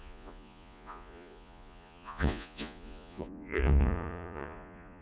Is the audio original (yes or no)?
no